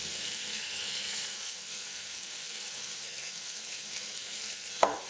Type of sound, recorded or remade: remade